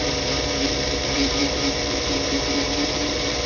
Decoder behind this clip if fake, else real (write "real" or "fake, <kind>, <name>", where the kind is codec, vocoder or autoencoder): fake, vocoder, BigVGAN v2